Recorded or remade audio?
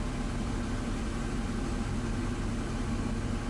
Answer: recorded